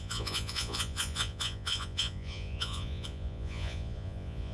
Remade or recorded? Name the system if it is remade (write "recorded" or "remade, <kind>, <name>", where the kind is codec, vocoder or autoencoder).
remade, vocoder, Vocos